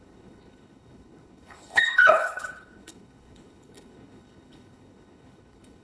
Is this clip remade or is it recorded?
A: remade